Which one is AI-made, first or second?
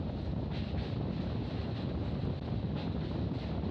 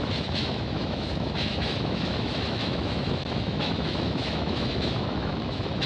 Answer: second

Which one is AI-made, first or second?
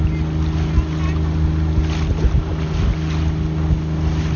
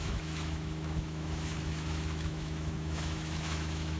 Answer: second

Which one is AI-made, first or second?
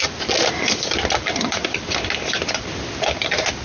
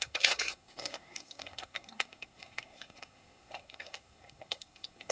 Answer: second